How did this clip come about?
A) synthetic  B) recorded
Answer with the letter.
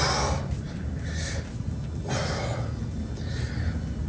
B